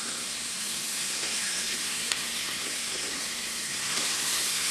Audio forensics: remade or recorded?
remade